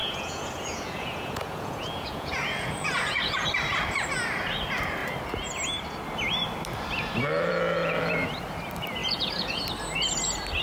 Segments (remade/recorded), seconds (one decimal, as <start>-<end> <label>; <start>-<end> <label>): 0.0-3.5 remade; 3.5-9.0 recorded; 9.0-9.6 remade; 9.6-10.6 recorded